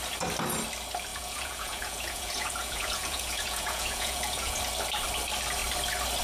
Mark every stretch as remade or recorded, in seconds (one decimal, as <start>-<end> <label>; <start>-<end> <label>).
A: 0.0-1.1 recorded; 1.1-4.6 remade; 4.6-6.2 recorded